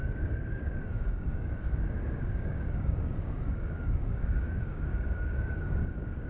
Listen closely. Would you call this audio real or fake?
fake